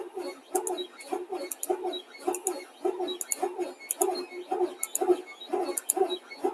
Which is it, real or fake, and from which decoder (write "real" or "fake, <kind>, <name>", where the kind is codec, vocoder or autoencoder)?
real